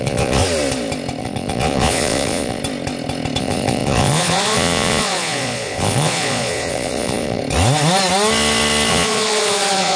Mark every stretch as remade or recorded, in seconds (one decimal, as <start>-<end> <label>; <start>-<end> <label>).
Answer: 0.0-0.4 remade; 0.4-1.2 recorded; 1.2-2.6 remade; 2.6-3.4 recorded; 3.4-7.4 remade; 7.4-8.9 recorded; 8.9-10.0 remade